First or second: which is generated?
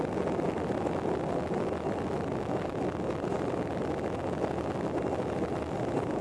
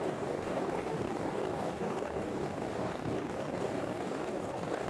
second